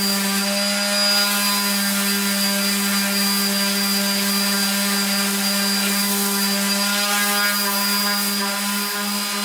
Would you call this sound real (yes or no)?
yes